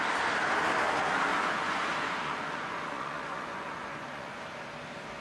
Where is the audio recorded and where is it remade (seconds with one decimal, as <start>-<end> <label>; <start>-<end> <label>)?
0.0-1.3 recorded; 1.3-4.4 remade; 4.4-5.2 recorded